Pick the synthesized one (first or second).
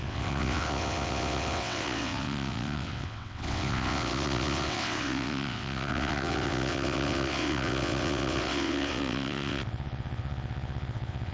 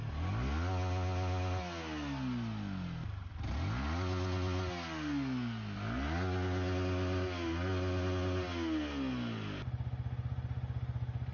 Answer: first